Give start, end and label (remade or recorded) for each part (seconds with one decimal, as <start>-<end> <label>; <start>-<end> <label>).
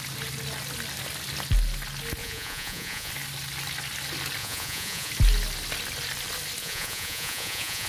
0.0-2.2 recorded; 2.2-3.1 remade; 3.1-4.4 recorded; 4.4-5.1 remade; 5.1-6.6 recorded; 6.6-7.9 remade